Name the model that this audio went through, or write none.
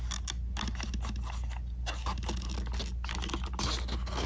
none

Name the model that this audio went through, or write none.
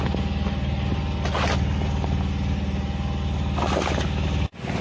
none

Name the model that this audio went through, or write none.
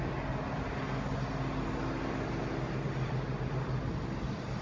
none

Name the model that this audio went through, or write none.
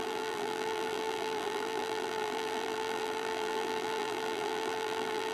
vocoder, BigVGAN v2